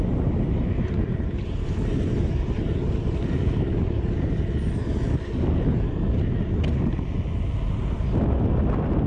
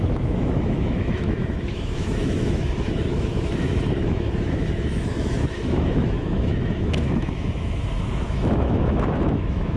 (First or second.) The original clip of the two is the first